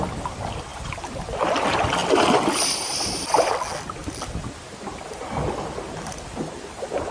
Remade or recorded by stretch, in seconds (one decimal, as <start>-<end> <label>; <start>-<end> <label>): 0.0-7.1 recorded